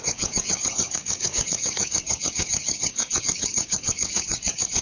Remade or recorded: remade